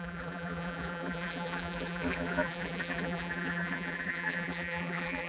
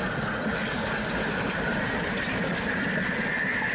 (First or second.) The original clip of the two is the second